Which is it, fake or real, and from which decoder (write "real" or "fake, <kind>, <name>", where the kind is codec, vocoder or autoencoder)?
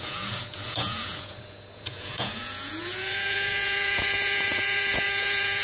fake, vocoder, Vocos